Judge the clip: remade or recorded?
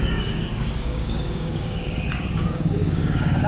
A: remade